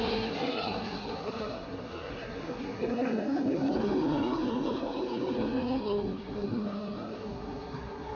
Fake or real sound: fake